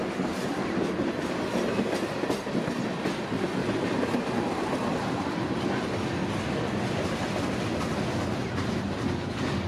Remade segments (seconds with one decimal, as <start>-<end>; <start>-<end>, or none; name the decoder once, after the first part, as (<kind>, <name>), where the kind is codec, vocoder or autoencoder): 3.6-5.1 (vocoder, BigVGAN v2)